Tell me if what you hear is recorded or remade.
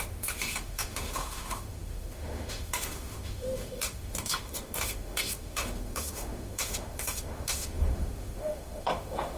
remade